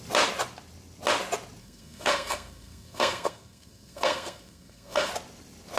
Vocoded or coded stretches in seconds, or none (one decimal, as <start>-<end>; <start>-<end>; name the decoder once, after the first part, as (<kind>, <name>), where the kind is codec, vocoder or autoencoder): 1.6-5.1 (codec, SNAC)